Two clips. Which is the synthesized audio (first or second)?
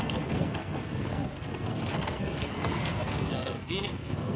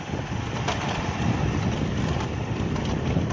first